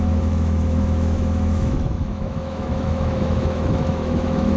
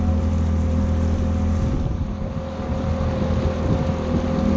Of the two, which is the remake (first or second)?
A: first